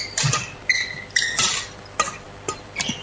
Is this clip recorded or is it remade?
recorded